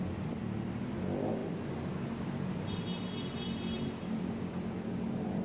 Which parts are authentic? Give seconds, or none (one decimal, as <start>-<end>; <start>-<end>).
0.0-5.4